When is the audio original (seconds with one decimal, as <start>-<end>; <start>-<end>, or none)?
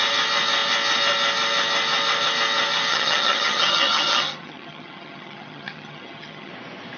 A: 0.0-2.9; 6.5-7.0